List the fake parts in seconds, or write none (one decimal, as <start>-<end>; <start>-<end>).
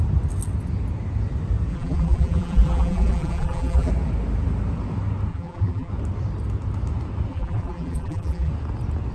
1.7-3.9; 5.3-5.9; 7.3-8.5